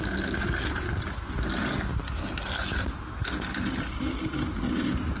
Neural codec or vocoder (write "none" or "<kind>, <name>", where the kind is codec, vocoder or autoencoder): none